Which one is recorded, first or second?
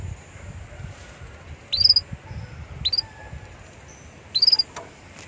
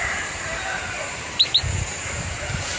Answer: first